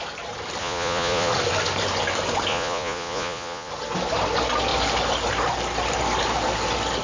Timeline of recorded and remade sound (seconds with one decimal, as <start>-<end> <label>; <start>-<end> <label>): 0.0-0.6 recorded; 0.6-1.3 remade; 1.3-2.5 recorded; 2.5-3.7 remade; 3.7-7.0 recorded